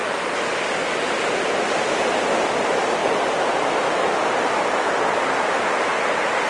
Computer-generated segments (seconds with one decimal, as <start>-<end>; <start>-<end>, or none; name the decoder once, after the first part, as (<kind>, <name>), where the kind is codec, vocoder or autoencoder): none